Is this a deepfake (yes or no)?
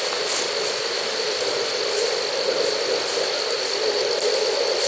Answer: no